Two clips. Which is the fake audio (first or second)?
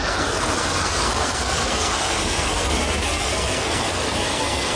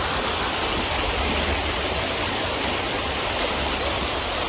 first